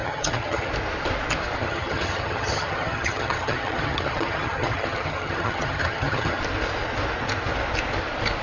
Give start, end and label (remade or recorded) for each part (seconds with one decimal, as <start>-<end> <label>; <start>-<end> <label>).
0.0-0.7 remade; 0.7-1.6 recorded; 1.6-6.4 remade; 6.4-8.4 recorded